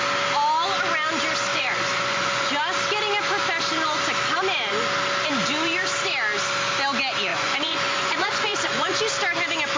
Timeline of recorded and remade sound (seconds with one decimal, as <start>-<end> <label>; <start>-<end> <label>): 0.0-1.5 recorded; 1.5-2.5 remade; 2.5-7.3 recorded; 7.3-9.0 remade; 9.0-9.8 recorded